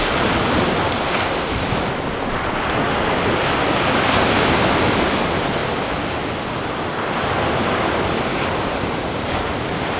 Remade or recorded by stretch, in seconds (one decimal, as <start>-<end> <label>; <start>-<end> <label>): 0.0-10.0 recorded